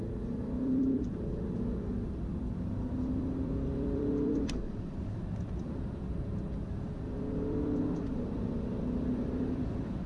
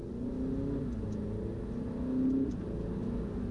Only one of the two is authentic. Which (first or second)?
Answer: second